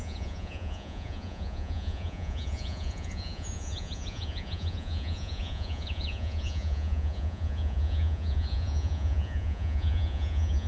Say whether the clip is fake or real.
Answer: fake